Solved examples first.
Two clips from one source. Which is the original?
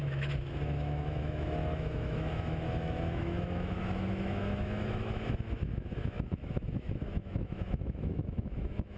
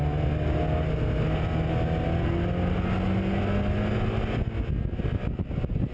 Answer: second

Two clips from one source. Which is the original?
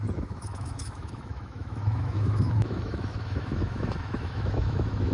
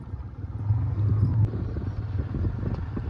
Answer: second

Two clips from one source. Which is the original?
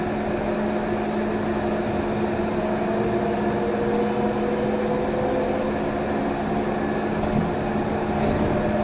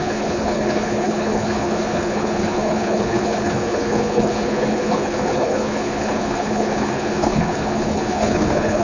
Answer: first